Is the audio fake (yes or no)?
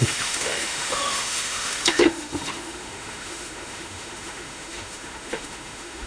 yes